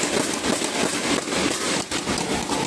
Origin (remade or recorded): recorded